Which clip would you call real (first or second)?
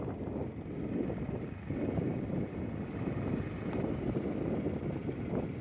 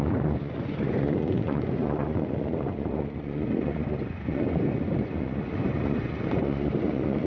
first